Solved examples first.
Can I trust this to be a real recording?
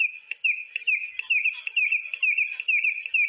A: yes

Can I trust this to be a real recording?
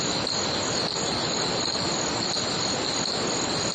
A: yes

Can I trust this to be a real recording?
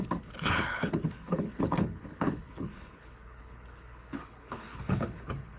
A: no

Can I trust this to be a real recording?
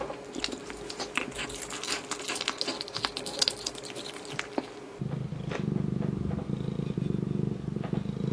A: yes